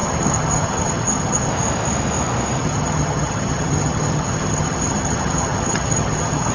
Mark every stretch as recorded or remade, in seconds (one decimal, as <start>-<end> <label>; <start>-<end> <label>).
0.0-1.5 remade; 1.5-2.6 recorded; 2.6-6.5 remade

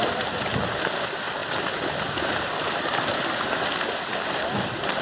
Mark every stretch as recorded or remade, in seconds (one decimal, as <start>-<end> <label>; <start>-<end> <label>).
0.0-5.0 recorded

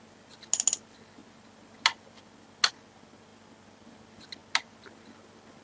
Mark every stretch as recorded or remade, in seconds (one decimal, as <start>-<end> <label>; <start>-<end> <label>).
0.0-5.6 recorded

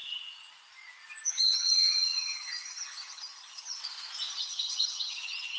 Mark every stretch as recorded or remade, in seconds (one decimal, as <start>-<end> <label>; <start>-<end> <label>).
0.0-1.3 recorded; 1.3-3.8 remade; 3.8-4.4 recorded; 4.4-5.6 remade

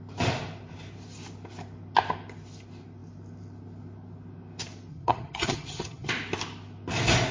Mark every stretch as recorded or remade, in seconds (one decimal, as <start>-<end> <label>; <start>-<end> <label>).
0.0-4.9 recorded; 4.9-6.1 remade; 6.1-7.3 recorded

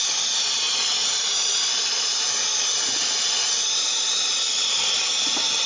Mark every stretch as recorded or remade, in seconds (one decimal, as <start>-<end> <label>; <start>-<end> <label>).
0.0-5.7 recorded

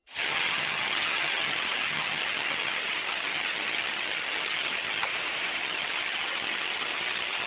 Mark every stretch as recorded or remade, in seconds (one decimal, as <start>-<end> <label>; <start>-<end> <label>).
0.0-5.1 remade; 5.1-5.6 recorded; 5.6-7.5 remade